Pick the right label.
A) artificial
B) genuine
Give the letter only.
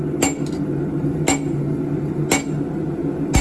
B